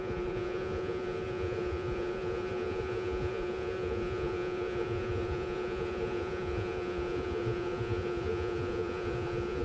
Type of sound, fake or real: fake